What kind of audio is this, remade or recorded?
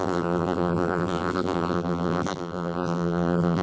remade